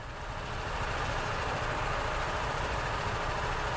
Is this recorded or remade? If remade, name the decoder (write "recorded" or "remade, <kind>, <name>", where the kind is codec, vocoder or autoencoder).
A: recorded